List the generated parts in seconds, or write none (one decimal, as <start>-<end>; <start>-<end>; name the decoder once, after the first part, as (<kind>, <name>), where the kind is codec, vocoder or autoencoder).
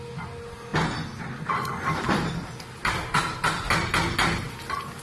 none